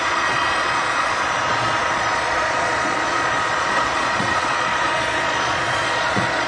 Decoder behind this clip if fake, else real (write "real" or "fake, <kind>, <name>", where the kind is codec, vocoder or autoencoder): fake, vocoder, Vocos